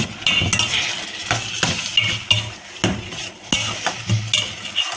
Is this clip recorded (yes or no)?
yes